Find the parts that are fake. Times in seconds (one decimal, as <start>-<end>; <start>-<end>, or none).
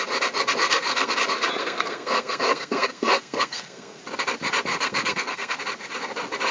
0.6-1.1; 1.6-4.0; 4.7-5.6